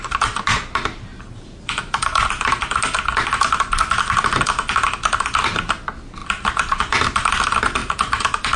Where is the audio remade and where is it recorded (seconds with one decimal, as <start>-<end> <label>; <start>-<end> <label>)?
0.0-1.1 recorded; 1.1-1.7 remade; 1.7-6.2 recorded; 6.2-7.3 remade; 7.3-7.8 recorded; 7.8-8.6 remade